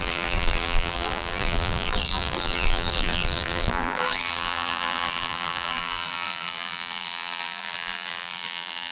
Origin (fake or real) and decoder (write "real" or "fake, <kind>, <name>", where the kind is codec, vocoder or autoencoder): fake, vocoder, BigVGAN v2